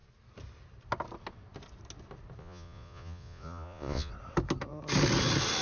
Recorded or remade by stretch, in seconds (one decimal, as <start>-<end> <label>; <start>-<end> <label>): 0.0-2.4 recorded; 2.4-4.1 remade; 4.1-5.6 recorded